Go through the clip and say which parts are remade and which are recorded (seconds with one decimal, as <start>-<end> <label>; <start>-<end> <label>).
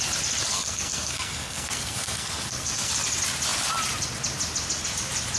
0.0-0.5 recorded; 0.5-2.9 remade; 2.9-5.4 recorded